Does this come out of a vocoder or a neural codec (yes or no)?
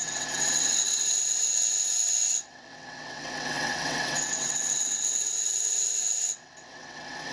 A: yes